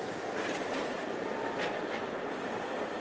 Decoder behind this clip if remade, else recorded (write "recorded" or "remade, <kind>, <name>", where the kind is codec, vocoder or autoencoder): recorded